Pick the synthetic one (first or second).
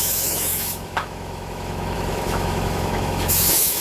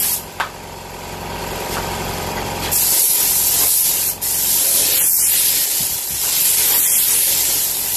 first